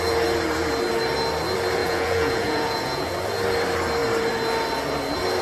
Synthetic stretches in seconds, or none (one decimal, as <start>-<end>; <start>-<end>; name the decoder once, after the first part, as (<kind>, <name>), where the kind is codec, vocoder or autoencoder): 1.8-3.1 (vocoder, Vocos)